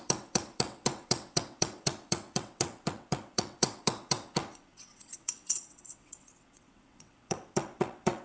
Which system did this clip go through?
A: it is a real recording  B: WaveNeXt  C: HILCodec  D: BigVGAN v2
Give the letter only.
B